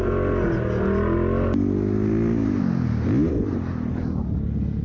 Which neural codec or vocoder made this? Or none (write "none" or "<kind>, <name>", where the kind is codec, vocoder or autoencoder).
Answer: none